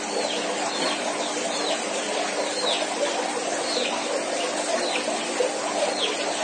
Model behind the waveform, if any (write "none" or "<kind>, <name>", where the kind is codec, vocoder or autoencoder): none